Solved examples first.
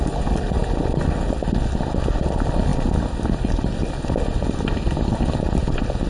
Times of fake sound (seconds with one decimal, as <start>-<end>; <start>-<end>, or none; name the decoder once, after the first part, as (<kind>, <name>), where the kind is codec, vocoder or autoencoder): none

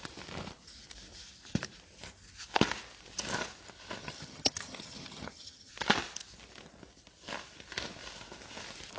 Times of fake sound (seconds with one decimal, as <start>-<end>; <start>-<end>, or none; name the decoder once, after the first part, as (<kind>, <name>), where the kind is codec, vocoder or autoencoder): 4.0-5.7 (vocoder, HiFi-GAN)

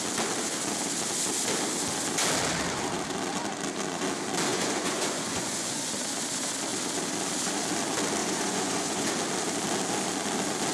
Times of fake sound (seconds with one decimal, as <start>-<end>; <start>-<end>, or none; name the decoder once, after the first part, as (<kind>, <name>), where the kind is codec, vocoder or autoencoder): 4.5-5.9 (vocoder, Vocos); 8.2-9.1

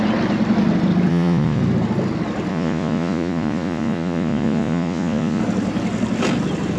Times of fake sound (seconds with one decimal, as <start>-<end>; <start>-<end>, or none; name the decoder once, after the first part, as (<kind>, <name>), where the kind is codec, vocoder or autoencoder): 1.1-1.6 (vocoder, Vocos); 2.5-5.4

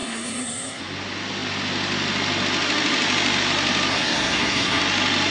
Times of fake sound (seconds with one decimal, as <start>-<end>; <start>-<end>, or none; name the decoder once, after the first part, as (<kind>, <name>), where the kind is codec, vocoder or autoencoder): 0.0-0.8 (codec, SNAC); 3.9-4.8

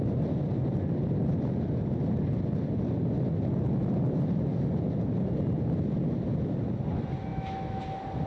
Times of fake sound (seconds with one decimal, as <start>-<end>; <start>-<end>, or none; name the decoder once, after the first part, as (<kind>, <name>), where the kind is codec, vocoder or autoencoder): 7.3-7.8 (autoencoder, DAC-VAE)